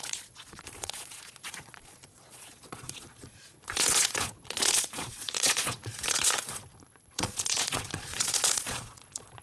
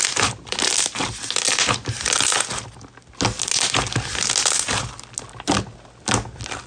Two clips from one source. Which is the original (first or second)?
second